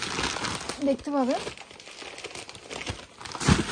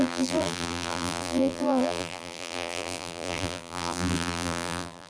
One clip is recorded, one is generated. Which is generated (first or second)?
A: second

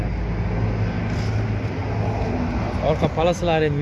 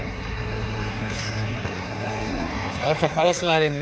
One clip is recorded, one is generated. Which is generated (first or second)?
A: second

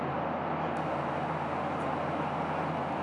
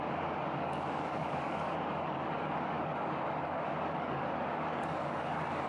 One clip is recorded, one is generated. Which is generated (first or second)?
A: second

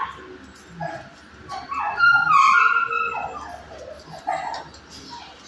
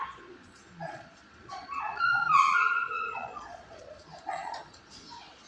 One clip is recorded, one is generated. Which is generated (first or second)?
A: second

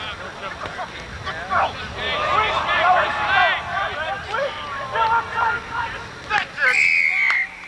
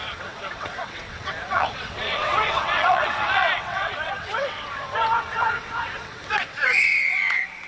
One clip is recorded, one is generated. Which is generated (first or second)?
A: second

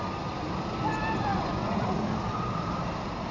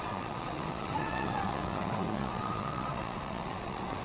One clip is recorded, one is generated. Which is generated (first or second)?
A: second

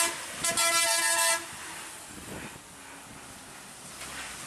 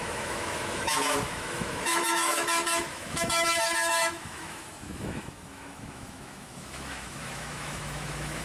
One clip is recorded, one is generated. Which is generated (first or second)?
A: second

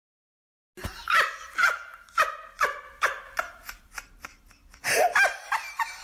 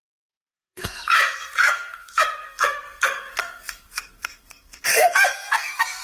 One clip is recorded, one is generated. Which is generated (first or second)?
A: second